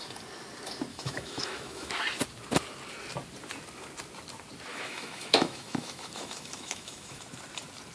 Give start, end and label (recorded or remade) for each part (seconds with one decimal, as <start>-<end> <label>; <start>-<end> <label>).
0.0-0.9 recorded; 0.9-1.9 remade; 1.9-4.7 recorded; 4.7-7.2 remade; 7.2-7.9 recorded